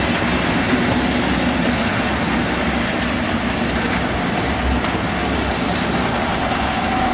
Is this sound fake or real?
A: real